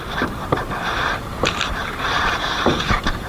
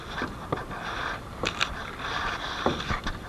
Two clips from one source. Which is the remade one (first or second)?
first